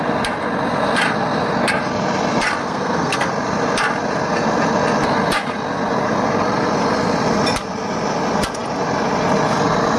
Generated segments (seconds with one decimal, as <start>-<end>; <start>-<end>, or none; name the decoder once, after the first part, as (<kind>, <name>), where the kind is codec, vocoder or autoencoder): 2.6-3.3 (codec, SNAC)